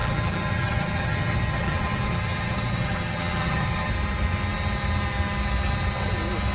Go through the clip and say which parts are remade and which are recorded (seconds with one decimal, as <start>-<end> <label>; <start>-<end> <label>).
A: 0.0-3.9 remade; 3.9-6.5 recorded

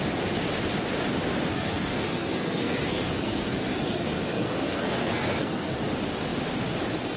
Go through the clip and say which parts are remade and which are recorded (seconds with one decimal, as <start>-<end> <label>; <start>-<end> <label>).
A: 0.0-1.5 recorded; 1.5-5.8 remade; 5.8-7.2 recorded

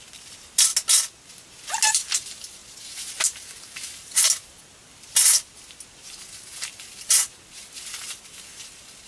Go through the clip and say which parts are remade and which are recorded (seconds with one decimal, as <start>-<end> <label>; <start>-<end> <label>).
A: 0.0-9.1 recorded